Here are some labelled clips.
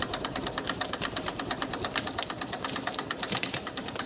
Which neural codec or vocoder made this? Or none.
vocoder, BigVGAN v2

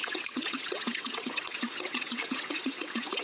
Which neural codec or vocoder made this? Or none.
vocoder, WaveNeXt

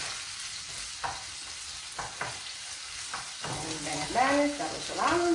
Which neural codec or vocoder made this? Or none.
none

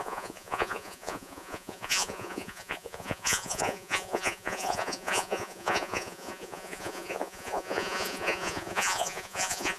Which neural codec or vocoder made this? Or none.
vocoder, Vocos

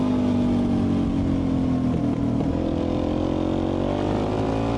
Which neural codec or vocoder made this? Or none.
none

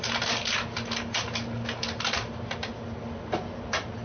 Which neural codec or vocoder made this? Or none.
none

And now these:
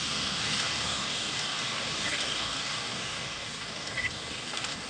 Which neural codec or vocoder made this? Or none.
codec, DAC